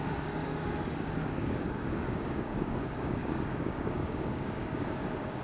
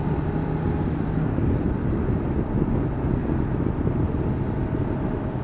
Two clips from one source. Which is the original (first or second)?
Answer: second